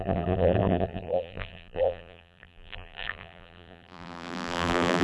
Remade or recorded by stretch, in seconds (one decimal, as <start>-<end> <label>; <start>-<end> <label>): 0.0-5.0 remade